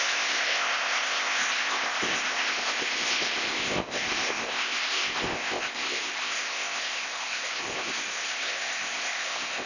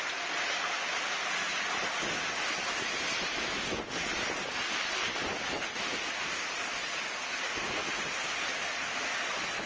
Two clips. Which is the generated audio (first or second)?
first